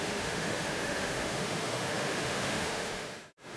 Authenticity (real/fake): fake